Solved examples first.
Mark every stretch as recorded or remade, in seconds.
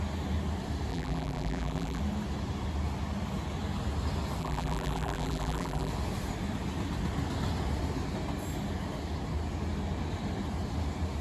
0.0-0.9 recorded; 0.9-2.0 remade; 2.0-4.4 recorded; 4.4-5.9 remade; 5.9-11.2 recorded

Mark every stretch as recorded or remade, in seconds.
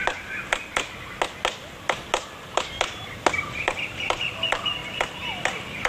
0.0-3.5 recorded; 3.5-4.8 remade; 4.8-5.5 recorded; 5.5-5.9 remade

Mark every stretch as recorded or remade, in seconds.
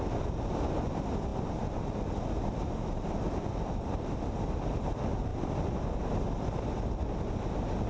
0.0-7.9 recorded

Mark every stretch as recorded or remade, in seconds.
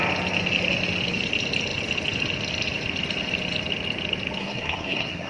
0.0-4.4 recorded; 4.4-5.3 remade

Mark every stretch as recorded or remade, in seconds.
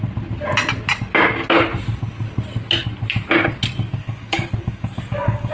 0.0-4.0 recorded; 4.0-5.5 remade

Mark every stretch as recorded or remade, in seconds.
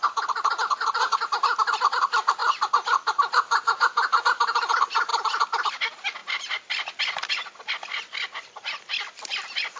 0.0-9.8 recorded